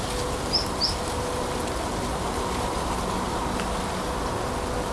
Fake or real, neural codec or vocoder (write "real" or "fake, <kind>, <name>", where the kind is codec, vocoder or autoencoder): real